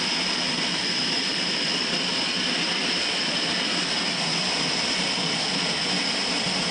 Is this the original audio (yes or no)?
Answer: yes